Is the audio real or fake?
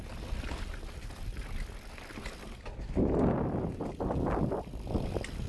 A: real